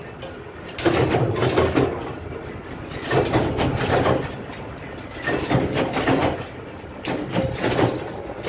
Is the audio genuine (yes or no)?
yes